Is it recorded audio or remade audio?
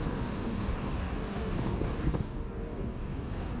remade